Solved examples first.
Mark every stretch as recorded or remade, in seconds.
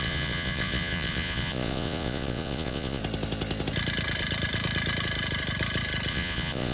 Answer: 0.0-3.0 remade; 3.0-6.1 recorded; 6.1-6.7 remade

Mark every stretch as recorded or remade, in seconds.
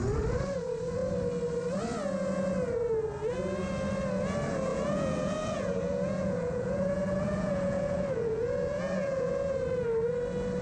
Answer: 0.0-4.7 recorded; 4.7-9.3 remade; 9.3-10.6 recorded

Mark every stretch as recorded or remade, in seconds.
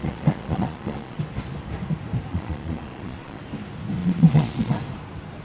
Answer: 0.0-1.2 remade; 1.2-2.3 recorded; 2.3-3.4 remade; 3.4-4.0 recorded; 4.0-4.8 remade; 4.8-5.4 recorded